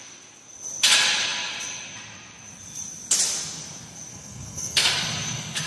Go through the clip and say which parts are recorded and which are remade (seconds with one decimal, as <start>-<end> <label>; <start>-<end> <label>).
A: 0.0-4.1 recorded; 4.1-4.9 remade; 4.9-5.7 recorded